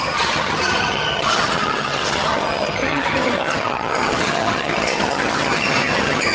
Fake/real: fake